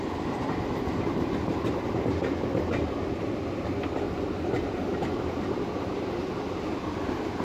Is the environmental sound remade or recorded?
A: recorded